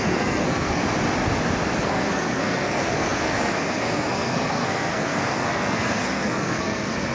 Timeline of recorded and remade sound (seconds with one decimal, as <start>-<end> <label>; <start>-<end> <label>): 0.0-0.8 remade; 0.8-1.8 recorded; 1.8-7.1 remade